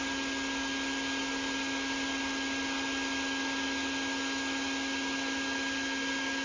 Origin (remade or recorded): recorded